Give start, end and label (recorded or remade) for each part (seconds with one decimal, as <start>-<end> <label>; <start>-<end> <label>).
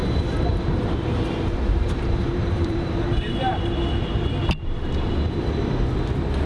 0.0-3.7 remade; 3.7-6.5 recorded